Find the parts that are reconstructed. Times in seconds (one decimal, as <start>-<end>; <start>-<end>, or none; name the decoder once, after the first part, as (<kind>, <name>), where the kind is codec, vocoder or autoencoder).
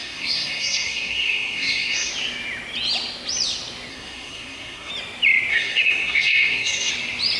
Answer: 0.0-2.1 (codec, SNAC); 3.9-4.9; 5.5-6.9